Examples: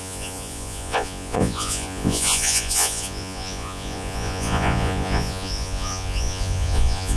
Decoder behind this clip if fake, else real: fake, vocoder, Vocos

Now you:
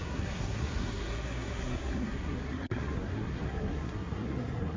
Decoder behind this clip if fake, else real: fake, codec, SNAC